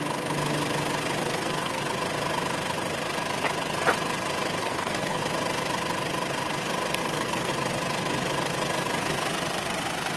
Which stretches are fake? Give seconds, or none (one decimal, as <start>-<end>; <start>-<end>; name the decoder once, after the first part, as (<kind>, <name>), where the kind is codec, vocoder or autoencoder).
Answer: 1.2-1.8 (codec, SNAC); 4.6-5.2; 7.0-7.5